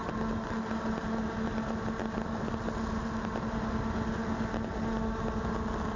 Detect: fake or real real